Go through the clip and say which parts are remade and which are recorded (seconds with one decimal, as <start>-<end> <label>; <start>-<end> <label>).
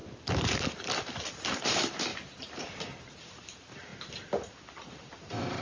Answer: 0.0-3.9 remade; 3.9-5.1 recorded; 5.1-5.6 remade